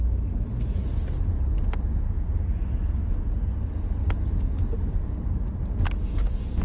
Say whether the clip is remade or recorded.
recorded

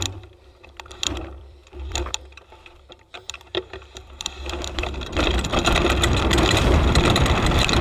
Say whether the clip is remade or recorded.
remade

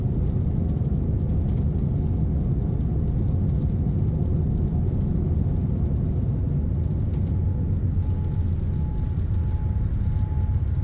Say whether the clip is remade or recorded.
recorded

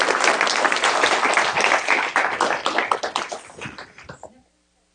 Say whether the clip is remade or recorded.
recorded